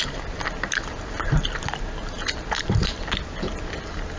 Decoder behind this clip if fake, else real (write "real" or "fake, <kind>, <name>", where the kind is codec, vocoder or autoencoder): real